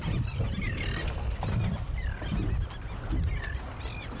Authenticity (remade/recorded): recorded